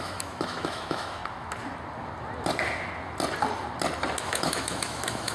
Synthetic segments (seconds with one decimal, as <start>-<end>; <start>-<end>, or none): 0.0-1.2; 4.2-5.3